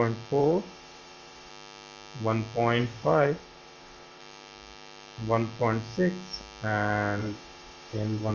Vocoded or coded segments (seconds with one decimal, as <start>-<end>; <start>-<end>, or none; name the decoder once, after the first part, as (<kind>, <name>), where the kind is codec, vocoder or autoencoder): 0.4-1.5 (vocoder, WaveNeXt); 2.8-4.2; 7.2-8.3